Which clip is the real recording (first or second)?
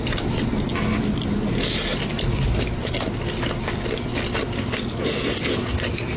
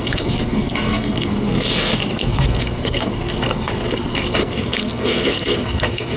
first